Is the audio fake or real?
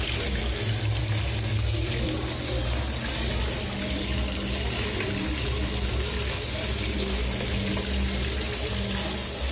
real